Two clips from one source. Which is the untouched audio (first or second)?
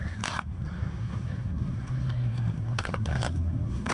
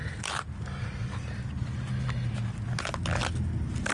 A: second